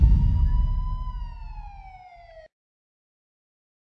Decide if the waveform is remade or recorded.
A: recorded